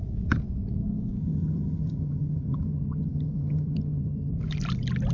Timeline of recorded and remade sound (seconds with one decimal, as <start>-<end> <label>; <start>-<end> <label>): 0.0-1.2 recorded; 1.2-4.3 remade; 4.3-5.1 recorded